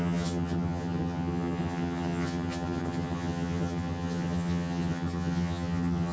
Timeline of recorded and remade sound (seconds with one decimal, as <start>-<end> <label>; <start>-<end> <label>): 0.0-6.1 remade